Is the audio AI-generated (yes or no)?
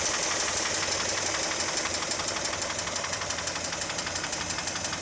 no